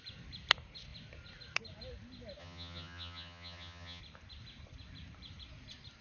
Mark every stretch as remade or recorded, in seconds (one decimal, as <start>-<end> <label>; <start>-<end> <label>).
0.0-2.4 recorded; 2.4-4.0 remade; 4.0-6.0 recorded

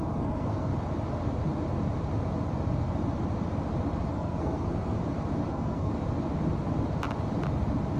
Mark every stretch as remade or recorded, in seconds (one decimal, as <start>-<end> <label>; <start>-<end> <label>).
0.0-0.7 remade; 0.7-4.1 recorded; 4.1-5.0 remade; 5.0-5.5 recorded; 5.5-5.9 remade; 5.9-8.0 recorded

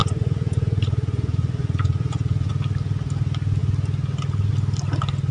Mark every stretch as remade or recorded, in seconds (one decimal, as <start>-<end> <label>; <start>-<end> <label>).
0.0-2.5 remade; 2.5-5.3 recorded